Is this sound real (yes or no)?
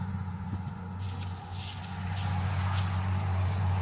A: no